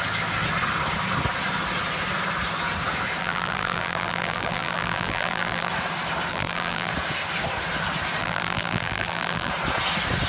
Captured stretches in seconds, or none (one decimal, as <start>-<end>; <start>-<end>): 0.0-3.2; 5.7-6.3; 6.9-8.2; 9.5-10.3